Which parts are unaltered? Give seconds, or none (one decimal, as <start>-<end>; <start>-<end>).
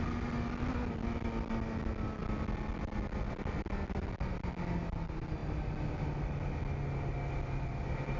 0.0-8.2